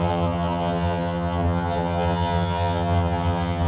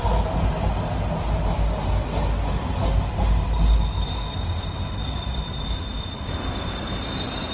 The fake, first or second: first